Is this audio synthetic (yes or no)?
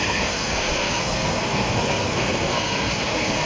yes